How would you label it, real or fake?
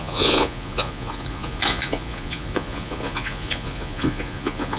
fake